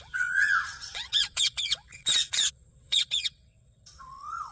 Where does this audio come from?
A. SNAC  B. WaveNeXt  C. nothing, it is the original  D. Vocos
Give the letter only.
B